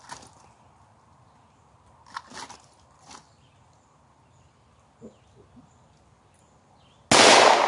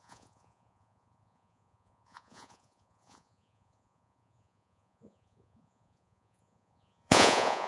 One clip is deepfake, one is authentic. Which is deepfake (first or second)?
second